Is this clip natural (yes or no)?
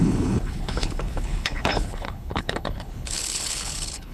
no